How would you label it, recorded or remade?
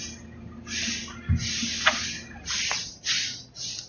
recorded